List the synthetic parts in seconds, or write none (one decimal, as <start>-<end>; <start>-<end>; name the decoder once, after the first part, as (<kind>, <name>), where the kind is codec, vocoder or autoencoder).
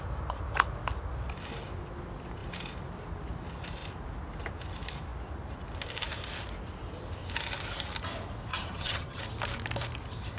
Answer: 8.5-9.2 (vocoder, HiFi-GAN)